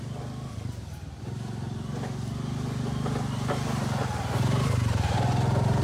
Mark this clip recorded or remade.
recorded